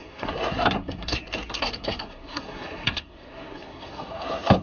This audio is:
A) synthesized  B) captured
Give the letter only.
A